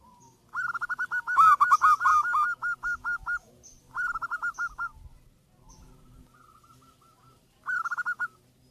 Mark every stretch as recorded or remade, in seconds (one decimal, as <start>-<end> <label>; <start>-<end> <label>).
0.0-8.7 recorded